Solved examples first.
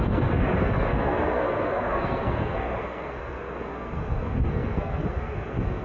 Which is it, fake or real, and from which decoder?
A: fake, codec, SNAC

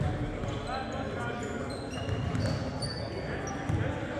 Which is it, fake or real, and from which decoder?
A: real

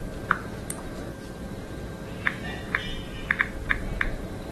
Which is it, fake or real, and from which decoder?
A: real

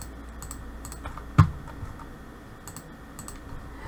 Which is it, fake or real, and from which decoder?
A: real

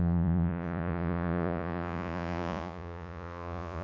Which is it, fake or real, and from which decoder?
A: fake, vocoder, Vocos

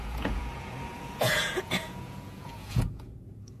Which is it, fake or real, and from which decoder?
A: fake, vocoder, Vocos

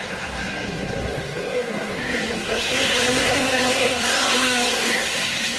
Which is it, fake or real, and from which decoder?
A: fake, codec, SNAC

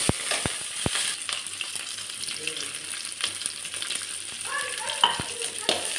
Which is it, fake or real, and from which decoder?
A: fake, vocoder, BigVGAN v2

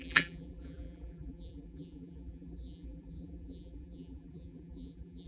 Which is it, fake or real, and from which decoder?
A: fake, vocoder, BigVGAN v2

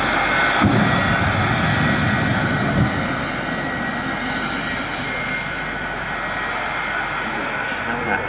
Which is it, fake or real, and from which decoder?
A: real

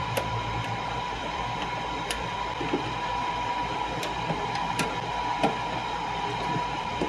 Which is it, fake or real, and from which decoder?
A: fake, vocoder, BigVGAN v2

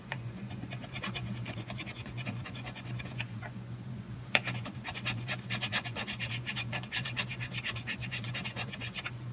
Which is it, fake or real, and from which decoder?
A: fake, vocoder, Vocos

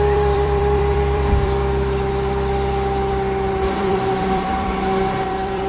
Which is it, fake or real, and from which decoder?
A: fake, vocoder, BigVGAN v2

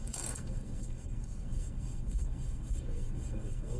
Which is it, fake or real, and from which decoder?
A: fake, codec, SNAC